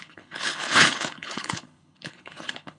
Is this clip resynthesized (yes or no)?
yes